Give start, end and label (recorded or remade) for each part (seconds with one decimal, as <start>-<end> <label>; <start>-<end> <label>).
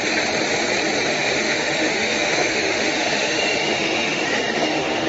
0.0-1.1 recorded; 1.1-5.1 remade